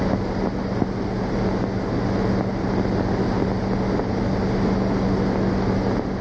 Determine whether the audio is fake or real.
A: real